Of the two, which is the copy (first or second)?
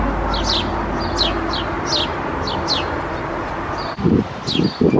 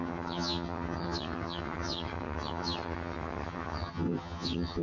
second